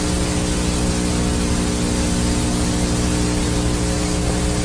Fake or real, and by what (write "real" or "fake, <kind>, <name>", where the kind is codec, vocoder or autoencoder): real